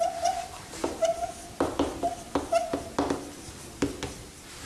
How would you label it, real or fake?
real